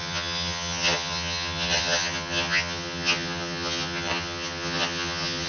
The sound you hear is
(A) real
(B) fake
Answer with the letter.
B